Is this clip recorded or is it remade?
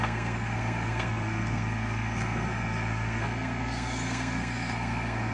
remade